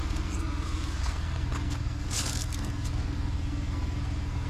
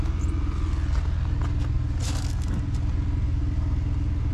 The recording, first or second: second